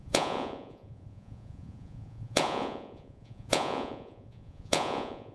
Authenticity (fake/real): fake